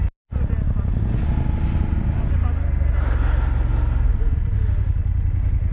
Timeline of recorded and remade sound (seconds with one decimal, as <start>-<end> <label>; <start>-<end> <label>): 0.0-5.7 recorded